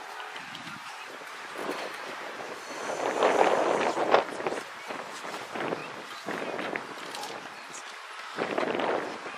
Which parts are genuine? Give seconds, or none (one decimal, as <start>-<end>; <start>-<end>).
0.0-9.4